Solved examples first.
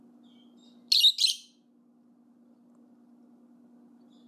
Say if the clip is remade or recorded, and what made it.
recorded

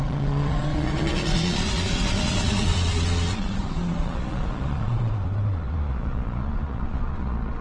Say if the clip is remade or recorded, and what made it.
remade, vocoder, Vocos